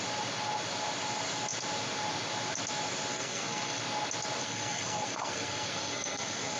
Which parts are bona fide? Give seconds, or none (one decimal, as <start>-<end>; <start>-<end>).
0.0-3.1; 3.8-4.4